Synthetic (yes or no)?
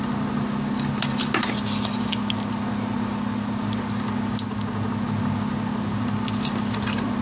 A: no